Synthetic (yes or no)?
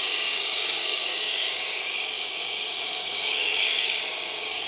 yes